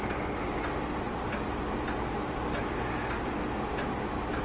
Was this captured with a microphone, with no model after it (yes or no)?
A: yes